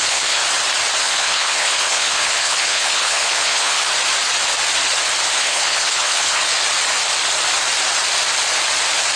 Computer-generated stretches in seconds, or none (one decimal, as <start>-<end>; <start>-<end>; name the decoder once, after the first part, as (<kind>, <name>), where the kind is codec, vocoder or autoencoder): 0.0-0.4 (codec, HILCodec); 1.0-3.9; 5.4-6.4